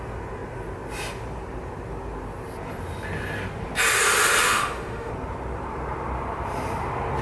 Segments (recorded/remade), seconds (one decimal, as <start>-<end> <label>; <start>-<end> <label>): 0.0-4.4 recorded; 4.4-5.1 remade; 5.1-7.2 recorded